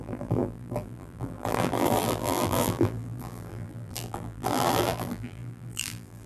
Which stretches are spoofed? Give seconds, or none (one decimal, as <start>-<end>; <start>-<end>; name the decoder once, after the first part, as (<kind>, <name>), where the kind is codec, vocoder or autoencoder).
0.0-6.3 (vocoder, BigVGAN v2)